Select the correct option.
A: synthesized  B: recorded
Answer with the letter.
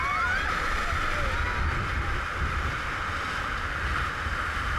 B